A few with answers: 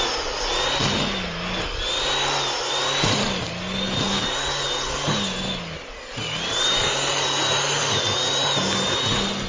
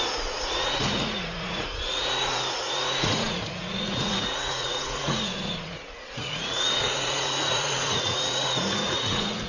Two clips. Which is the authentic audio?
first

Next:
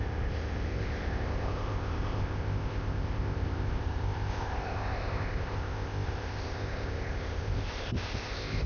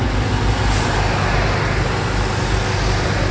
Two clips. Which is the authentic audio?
second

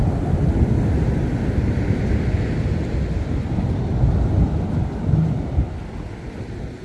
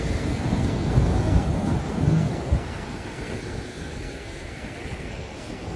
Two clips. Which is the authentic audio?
first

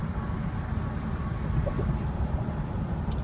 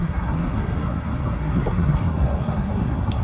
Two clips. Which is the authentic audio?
first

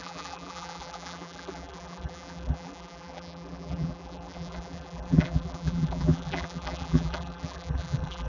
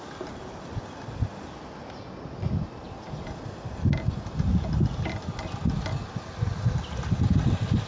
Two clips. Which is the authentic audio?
second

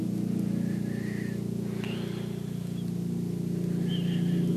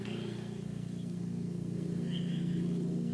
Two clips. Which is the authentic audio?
first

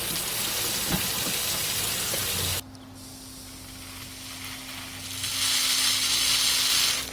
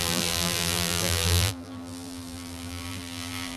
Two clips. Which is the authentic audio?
first